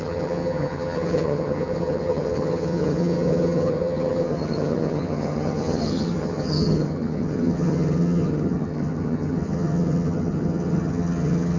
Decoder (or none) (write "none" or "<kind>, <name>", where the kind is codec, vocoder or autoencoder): vocoder, HiFi-GAN